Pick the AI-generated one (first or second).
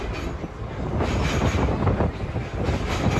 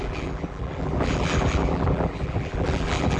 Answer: second